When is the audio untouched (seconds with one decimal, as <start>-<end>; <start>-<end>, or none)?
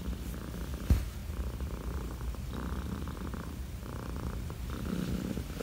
0.0-1.2; 4.6-5.6